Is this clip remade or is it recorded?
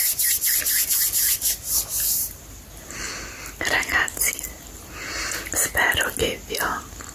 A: recorded